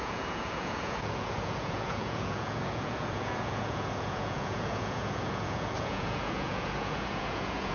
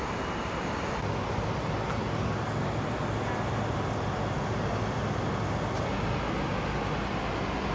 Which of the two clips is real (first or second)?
second